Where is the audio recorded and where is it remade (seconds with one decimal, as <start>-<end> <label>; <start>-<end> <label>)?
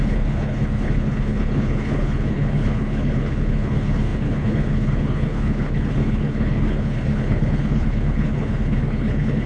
0.0-9.5 remade